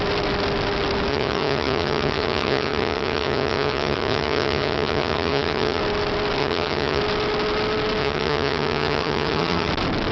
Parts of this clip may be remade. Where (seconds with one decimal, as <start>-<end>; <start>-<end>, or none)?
1.1-5.8; 6.4-7.0; 8.0-9.7